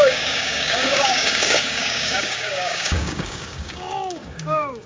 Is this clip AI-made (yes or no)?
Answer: yes